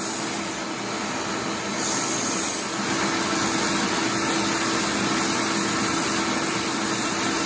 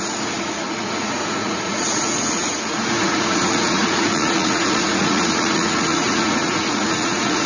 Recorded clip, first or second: first